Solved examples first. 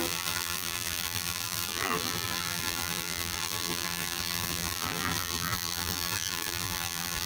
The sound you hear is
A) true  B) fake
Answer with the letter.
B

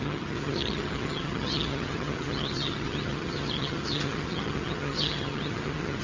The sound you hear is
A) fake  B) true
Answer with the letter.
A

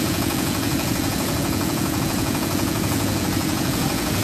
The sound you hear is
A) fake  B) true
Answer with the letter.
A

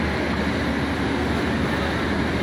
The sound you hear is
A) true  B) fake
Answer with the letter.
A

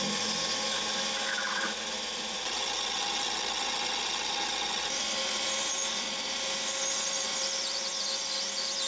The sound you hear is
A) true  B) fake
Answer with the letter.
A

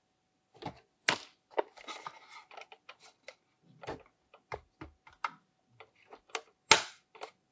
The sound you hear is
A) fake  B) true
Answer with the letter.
B